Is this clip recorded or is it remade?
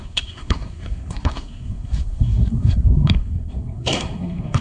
remade